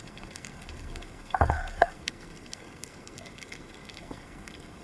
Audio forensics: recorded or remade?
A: remade